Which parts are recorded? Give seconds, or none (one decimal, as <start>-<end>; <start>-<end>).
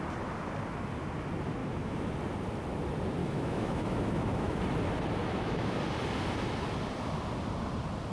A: 0.0-1.6; 2.1-3.2; 4.6-5.2; 5.8-8.1